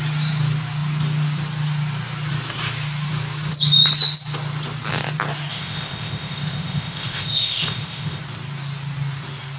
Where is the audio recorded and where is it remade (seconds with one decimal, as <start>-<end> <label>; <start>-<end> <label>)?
0.0-5.5 recorded; 5.5-8.2 remade; 8.2-9.6 recorded